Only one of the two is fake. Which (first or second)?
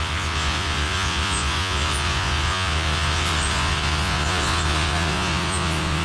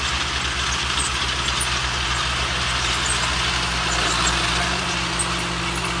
first